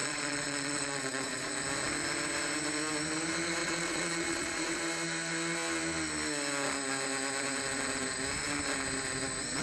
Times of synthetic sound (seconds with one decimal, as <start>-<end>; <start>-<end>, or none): 0.0-1.5; 3.6-4.8